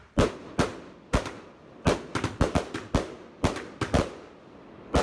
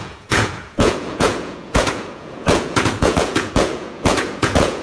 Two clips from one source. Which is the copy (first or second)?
second